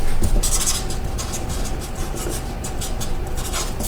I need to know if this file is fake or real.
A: real